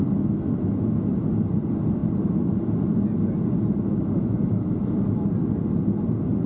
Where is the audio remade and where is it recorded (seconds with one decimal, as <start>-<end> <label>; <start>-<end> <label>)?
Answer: 0.0-6.5 recorded